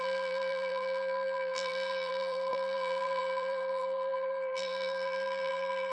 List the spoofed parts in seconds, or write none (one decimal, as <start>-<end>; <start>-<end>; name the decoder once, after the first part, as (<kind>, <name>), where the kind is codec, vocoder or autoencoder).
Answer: 0.0-5.9 (vocoder, BigVGAN v2)